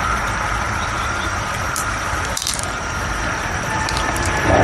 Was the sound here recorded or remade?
remade